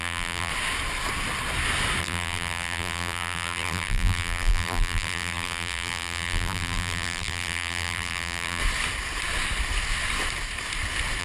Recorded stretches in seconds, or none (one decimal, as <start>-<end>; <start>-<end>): 0.5-2.0; 8.6-11.2